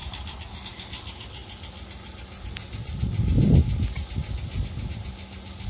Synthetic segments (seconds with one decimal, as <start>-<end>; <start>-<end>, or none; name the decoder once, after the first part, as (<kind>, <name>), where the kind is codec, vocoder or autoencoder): 0.0-0.6 (vocoder, BigVGAN v2)